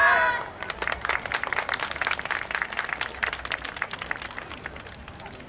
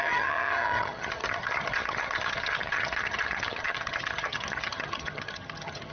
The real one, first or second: first